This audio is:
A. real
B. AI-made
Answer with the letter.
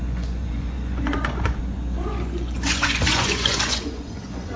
B